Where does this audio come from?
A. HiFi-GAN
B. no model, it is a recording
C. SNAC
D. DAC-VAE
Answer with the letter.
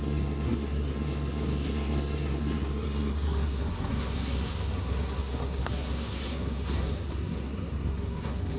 C